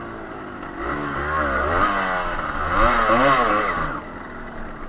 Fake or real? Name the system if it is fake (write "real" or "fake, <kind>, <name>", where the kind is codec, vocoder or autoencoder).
real